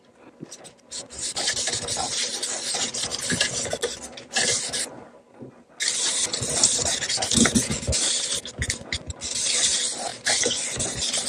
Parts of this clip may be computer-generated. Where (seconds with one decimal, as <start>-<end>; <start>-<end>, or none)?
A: none